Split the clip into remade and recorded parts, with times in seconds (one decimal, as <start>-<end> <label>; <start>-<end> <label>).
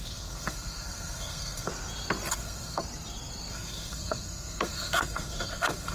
0.0-1.7 remade; 1.7-2.3 recorded; 2.3-2.8 remade; 2.8-3.5 recorded; 3.5-5.9 remade